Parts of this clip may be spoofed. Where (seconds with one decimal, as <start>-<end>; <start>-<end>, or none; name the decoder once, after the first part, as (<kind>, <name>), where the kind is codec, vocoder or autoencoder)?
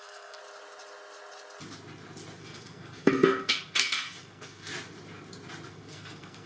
0.0-0.4 (codec, SNAC); 2.4-4.7; 5.7-6.5